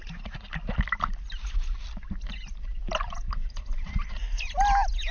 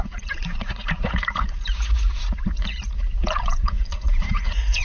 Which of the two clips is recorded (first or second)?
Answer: first